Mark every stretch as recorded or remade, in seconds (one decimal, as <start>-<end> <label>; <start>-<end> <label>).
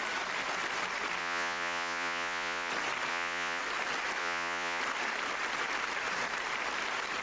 0.0-1.2 recorded; 1.2-2.7 remade; 2.7-3.1 recorded; 3.1-3.6 remade; 3.6-4.2 recorded; 4.2-4.8 remade; 4.8-7.2 recorded